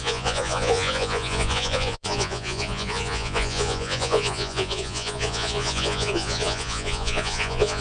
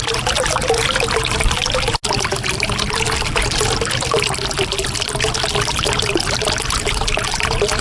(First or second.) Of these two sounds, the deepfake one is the first